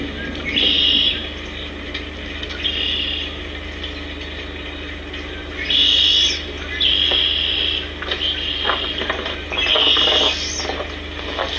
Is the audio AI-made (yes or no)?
no